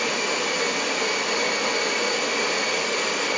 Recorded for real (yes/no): yes